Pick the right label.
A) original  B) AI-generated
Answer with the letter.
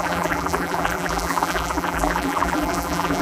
B